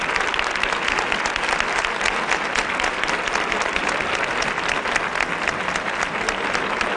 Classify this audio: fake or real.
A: real